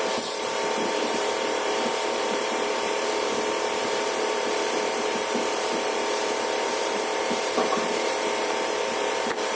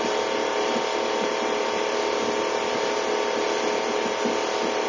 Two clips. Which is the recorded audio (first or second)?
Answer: second